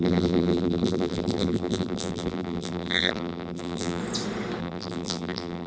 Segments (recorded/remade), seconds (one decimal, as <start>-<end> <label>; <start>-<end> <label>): 0.0-4.0 remade; 4.0-4.6 recorded; 4.6-5.7 remade